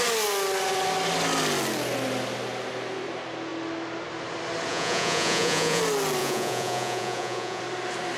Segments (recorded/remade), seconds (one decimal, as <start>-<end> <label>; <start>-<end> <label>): 0.0-4.7 recorded; 4.7-5.8 remade; 5.8-6.2 recorded; 6.2-7.6 remade; 7.6-8.2 recorded